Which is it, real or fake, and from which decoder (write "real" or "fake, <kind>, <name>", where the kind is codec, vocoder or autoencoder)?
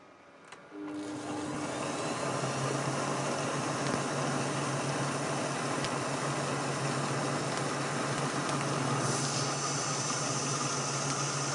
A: real